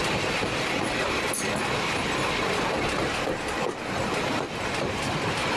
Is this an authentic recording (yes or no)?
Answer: yes